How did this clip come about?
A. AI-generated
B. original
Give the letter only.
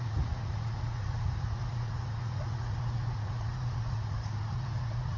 A